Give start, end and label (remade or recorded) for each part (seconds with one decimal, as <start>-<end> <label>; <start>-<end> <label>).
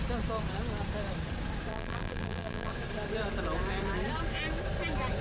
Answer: 0.0-1.7 recorded; 1.7-2.7 remade; 2.7-5.2 recorded